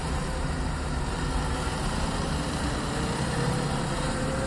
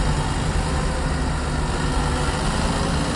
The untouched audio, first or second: second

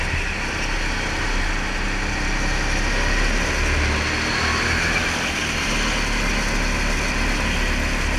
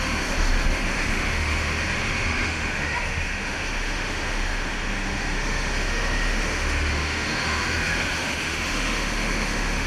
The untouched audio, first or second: first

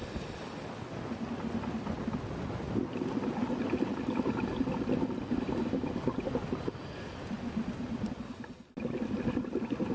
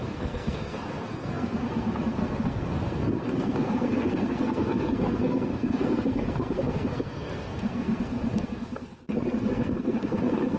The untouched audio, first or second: first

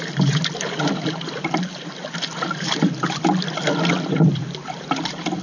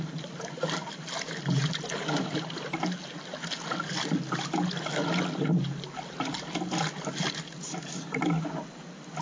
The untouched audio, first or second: second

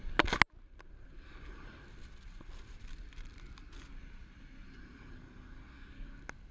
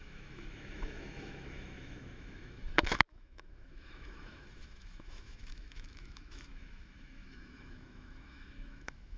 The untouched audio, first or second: first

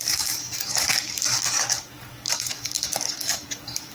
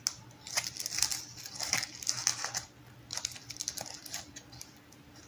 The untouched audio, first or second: second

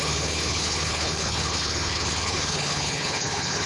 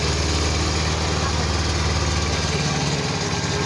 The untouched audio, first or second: second